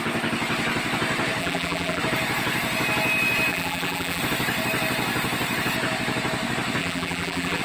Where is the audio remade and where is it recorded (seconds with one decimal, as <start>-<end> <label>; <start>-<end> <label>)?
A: 0.0-1.4 recorded; 1.4-2.0 remade; 2.0-3.5 recorded; 3.5-4.2 remade; 4.2-6.8 recorded; 6.8-7.6 remade